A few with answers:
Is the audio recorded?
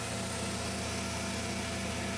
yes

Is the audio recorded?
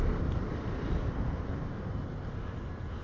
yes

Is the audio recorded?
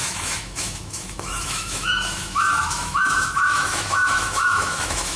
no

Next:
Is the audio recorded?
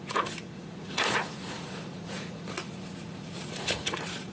no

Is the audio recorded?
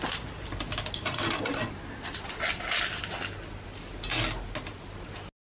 yes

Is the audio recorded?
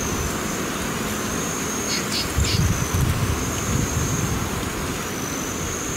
yes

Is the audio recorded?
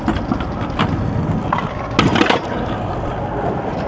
yes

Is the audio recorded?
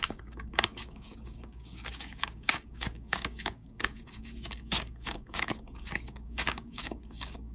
no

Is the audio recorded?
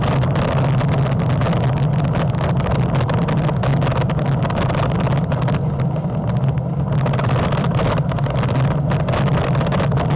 yes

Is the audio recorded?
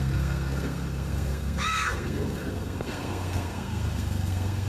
no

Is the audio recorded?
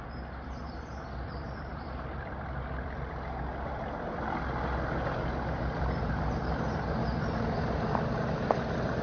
no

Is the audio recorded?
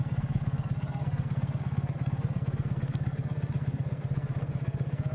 no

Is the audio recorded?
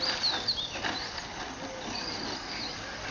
yes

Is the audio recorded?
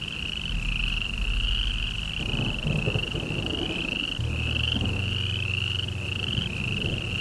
yes